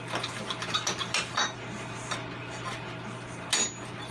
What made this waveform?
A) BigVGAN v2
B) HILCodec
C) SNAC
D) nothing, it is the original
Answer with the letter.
D